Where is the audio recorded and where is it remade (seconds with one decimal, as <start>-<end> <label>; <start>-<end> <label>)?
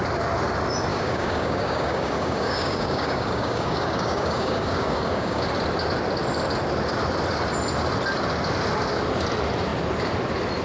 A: 0.0-0.9 recorded; 0.9-5.4 remade; 5.4-10.6 recorded